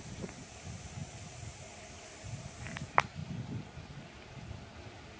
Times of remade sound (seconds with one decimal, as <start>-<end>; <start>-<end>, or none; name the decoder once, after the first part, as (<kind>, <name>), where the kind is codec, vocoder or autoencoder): none